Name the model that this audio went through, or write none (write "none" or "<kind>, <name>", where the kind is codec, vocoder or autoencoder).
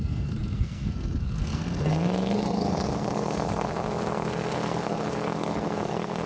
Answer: codec, SNAC